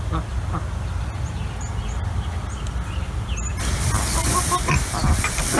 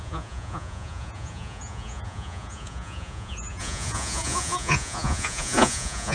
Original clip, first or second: first